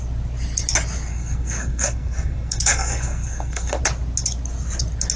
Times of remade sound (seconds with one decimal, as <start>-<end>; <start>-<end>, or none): 1.1-3.8

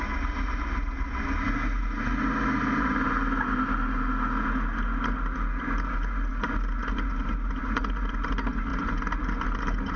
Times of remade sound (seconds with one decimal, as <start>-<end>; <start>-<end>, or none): none